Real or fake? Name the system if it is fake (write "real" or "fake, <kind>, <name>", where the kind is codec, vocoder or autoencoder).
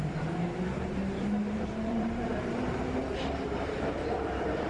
fake, vocoder, BigVGAN v2